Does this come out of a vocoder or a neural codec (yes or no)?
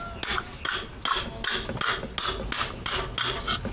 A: no